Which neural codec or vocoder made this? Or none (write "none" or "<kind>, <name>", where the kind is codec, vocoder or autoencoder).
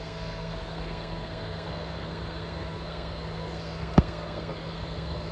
codec, SNAC